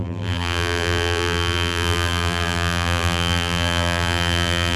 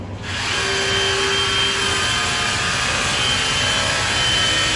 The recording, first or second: second